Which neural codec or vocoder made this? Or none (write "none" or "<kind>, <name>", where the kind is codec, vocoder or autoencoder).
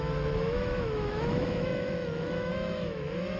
autoencoder, DAC-VAE